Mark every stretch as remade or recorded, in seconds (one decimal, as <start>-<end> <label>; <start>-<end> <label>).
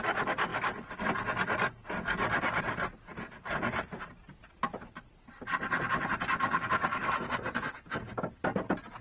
0.0-3.1 recorded; 3.1-4.0 remade; 4.0-6.9 recorded; 6.9-7.7 remade; 7.7-9.0 recorded